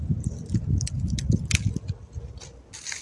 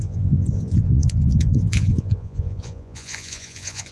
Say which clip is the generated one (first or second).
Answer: second